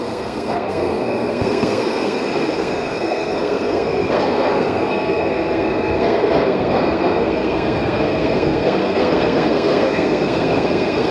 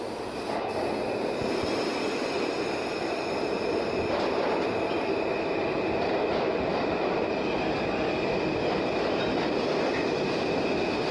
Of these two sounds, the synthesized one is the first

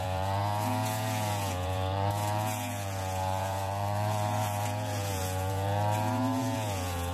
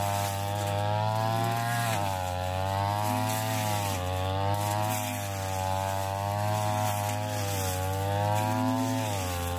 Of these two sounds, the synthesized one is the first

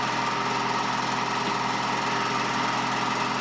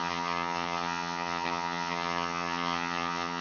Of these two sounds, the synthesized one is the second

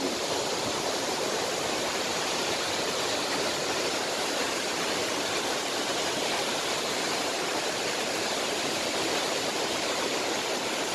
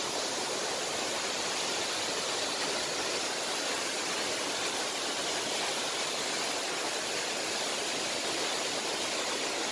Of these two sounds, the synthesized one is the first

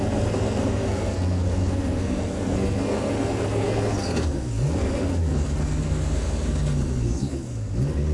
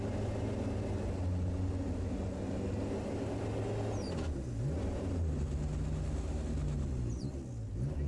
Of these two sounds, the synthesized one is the first